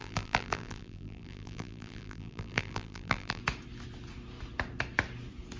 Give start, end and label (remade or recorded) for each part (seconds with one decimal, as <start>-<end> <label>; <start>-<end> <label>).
0.0-3.4 remade; 3.4-5.6 recorded